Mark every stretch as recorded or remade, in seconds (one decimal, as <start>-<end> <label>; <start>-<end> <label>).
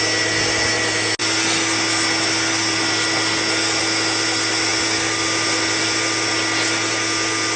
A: 0.0-7.6 recorded